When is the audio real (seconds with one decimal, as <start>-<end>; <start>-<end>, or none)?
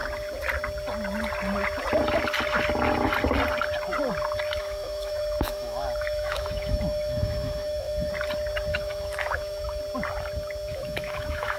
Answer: 0.0-4.6; 8.1-8.7; 9.8-10.7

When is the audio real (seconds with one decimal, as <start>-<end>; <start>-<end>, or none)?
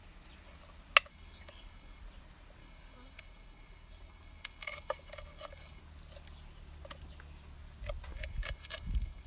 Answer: 0.0-1.1; 2.0-2.6; 5.8-8.1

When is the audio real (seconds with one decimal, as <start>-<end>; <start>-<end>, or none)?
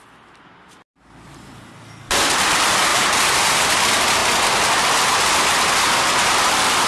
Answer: 0.0-2.9; 3.8-6.9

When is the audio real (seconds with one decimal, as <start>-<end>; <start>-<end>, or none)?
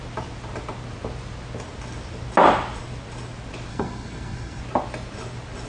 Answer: 0.0-3.7; 4.6-5.7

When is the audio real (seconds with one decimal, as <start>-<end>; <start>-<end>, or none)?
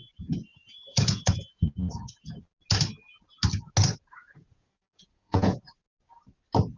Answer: 0.0-0.5; 1.9-4.2; 5.6-6.8